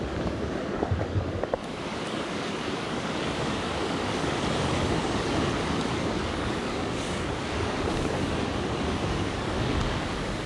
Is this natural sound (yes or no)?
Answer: no